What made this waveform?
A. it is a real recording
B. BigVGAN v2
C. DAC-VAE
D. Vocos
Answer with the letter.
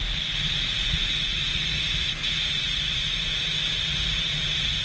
B